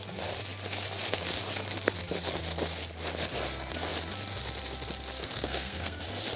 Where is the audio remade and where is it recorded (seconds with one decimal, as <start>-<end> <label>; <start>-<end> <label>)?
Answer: 0.0-5.2 recorded; 5.2-6.0 remade; 6.0-6.4 recorded